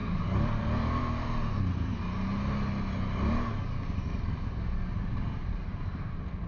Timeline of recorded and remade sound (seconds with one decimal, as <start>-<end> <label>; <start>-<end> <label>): 0.0-1.0 remade; 1.0-6.5 recorded